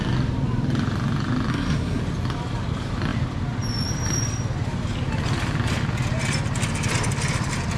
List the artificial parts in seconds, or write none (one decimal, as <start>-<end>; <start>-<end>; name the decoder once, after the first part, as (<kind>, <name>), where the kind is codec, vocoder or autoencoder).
1.5-2.0 (codec, SNAC)